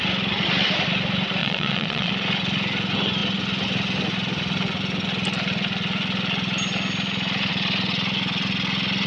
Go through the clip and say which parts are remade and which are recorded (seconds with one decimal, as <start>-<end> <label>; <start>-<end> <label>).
0.0-1.4 recorded; 1.4-2.1 remade; 2.1-9.1 recorded